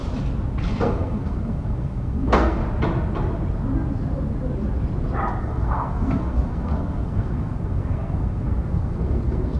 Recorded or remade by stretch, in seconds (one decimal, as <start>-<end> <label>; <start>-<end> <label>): 0.0-0.7 recorded; 0.7-2.6 remade; 2.6-5.4 recorded; 5.4-9.6 remade